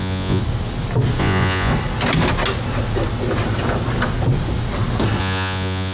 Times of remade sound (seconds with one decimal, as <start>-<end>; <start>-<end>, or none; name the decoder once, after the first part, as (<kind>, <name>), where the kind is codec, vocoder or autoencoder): 0.0-0.4 (vocoder, Vocos); 1.2-1.7; 5.2-5.9